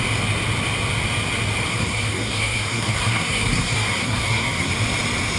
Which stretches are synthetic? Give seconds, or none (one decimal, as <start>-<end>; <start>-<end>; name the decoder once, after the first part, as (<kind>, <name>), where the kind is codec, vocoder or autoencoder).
1.7-4.7 (codec, SNAC)